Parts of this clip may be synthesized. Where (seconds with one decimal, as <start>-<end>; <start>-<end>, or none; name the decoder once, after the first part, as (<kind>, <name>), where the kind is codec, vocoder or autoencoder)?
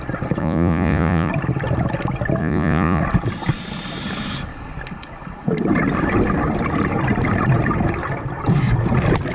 0.4-1.3 (vocoder, Vocos); 2.4-3.0